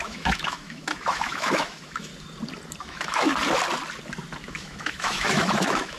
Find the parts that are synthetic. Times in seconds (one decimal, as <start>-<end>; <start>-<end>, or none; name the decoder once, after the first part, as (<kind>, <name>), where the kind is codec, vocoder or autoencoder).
0.0-2.1 (autoencoder, DAC-VAE); 2.8-3.3; 4.5-6.0